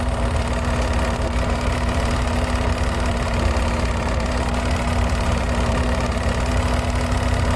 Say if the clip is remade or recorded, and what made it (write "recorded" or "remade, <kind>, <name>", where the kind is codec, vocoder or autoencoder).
recorded